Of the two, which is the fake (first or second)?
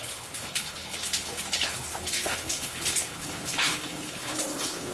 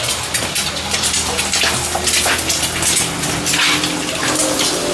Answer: first